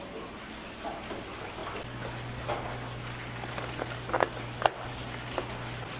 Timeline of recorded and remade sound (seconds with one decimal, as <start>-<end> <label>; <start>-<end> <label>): 0.0-6.0 recorded